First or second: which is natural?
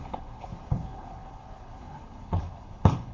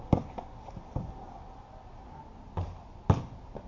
second